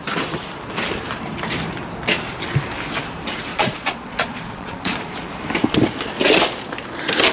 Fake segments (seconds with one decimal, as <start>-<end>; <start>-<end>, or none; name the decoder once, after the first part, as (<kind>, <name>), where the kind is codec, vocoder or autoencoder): 3.5-5.3 (vocoder, Vocos)